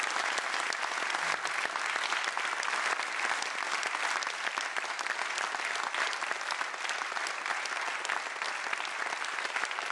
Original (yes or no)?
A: yes